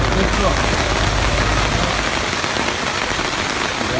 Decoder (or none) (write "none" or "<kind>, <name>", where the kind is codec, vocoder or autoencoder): vocoder, BigVGAN v2